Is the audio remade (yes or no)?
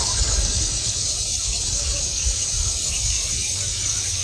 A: yes